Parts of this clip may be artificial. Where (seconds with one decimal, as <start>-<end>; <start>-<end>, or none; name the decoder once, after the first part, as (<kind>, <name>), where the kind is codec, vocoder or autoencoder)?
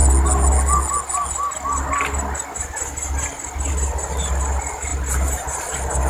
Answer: 4.9-6.1 (vocoder, BigVGAN v2)